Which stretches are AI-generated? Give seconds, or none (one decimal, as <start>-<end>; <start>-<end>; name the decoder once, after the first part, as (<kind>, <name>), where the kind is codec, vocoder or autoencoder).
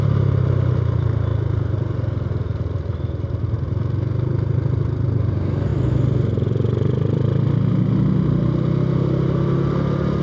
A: none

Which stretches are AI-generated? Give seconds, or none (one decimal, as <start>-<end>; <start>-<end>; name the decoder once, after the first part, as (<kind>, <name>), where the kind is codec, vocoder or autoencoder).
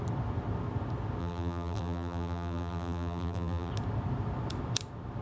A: 1.2-3.7 (vocoder, BigVGAN v2)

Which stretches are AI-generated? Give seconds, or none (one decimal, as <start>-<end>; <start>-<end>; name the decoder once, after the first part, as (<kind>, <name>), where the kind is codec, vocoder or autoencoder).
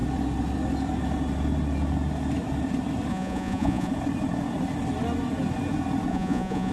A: 3.1-3.9 (vocoder, Vocos); 6.1-6.7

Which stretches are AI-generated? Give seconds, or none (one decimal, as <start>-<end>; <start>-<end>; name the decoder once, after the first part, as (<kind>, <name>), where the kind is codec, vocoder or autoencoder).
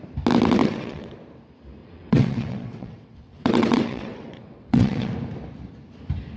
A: 0.6-1.1 (vocoder, WaveNeXt); 1.8-5.1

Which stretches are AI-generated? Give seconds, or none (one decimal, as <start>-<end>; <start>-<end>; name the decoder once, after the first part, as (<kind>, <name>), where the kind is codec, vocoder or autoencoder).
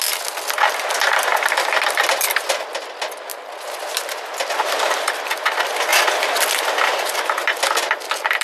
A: 1.3-2.5 (vocoder, BigVGAN v2)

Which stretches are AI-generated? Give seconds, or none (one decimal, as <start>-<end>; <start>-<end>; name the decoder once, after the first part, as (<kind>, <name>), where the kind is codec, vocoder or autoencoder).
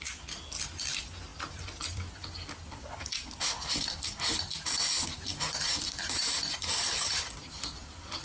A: none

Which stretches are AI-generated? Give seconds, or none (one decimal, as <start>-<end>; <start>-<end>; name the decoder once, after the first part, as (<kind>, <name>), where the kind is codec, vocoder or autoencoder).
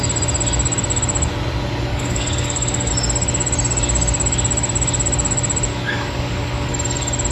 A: 1.9-2.9 (codec, DAC); 5.7-6.7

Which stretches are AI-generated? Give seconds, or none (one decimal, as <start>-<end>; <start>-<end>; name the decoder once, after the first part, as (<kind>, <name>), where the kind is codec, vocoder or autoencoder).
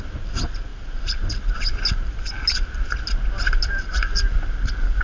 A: 0.7-1.4 (vocoder, BigVGAN v2)